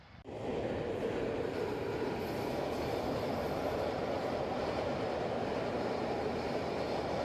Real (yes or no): yes